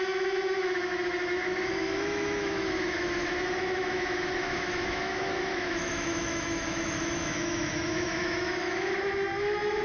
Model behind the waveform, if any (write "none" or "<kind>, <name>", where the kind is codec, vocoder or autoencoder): autoencoder, DAC-VAE